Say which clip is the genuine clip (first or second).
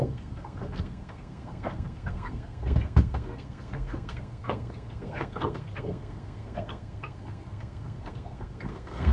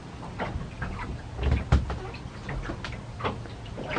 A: second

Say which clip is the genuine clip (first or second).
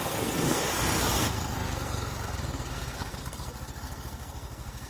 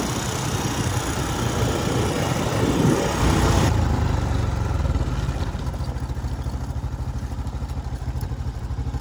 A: second